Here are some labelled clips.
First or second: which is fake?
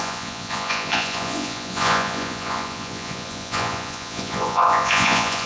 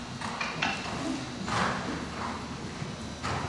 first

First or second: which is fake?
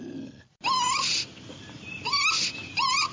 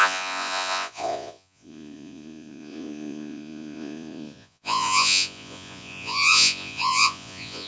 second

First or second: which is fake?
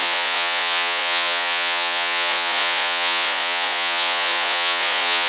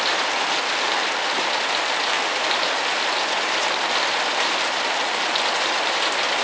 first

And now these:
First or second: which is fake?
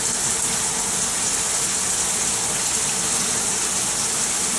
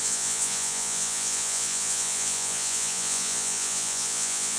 second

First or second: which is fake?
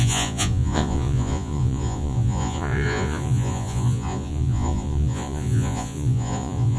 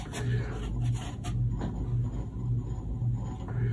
first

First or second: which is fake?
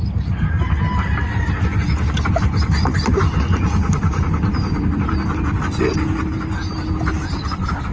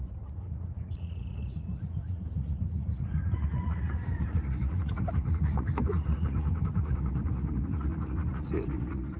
second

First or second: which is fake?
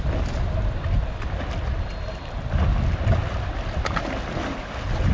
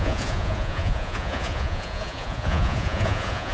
second